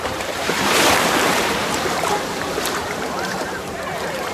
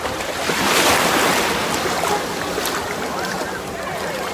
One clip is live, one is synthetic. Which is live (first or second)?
second